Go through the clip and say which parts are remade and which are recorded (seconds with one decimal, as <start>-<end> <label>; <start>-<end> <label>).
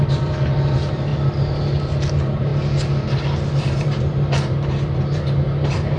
0.0-1.1 remade; 1.1-2.1 recorded; 2.1-2.5 remade; 2.5-3.6 recorded; 3.6-6.0 remade